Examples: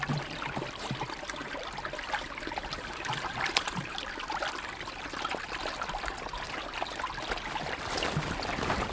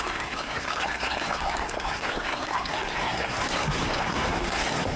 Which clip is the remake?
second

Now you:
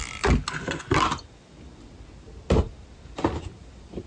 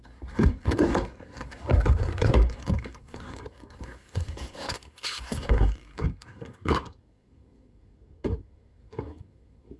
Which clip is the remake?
second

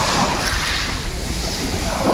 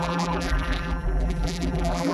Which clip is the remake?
second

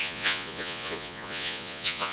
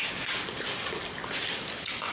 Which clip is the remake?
first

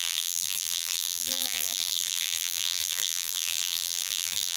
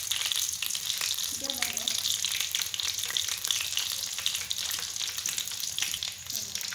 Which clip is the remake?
first